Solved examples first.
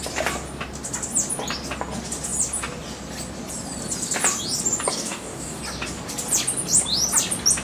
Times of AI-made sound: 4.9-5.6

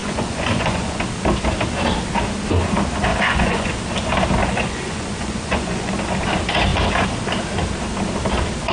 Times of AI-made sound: 0.0-1.0; 3.1-3.7; 4.4-5.9

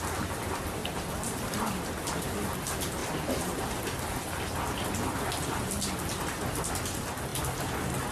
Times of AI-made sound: 0.8-1.7